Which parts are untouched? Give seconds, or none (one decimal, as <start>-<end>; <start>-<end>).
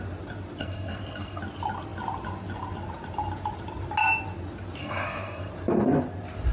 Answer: 0.0-0.6; 1.4-4.8; 5.5-6.5